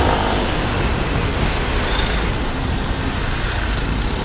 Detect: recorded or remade recorded